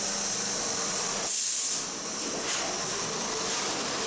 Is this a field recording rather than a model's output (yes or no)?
yes